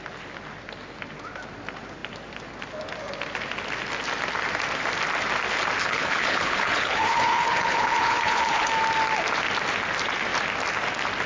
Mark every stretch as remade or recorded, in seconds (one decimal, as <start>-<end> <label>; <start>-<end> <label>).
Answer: 0.0-5.8 recorded; 5.8-8.7 remade; 8.7-11.3 recorded